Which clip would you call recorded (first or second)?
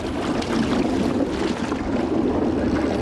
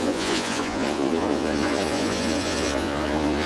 first